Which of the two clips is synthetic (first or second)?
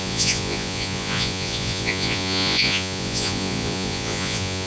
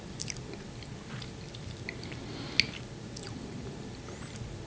first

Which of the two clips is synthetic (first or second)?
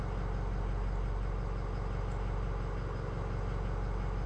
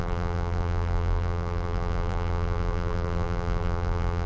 second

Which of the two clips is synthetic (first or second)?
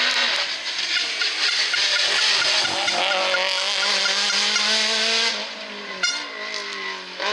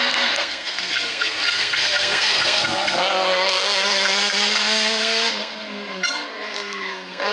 second